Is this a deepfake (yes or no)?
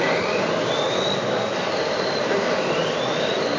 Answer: no